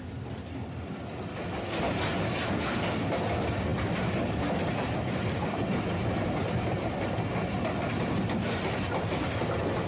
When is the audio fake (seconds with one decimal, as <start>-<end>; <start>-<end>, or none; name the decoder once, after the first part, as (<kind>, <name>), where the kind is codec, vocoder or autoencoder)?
3.7-7.1 (vocoder, BigVGAN v2)